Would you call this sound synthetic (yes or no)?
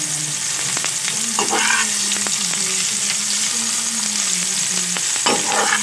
no